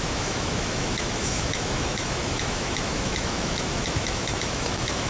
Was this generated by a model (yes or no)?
yes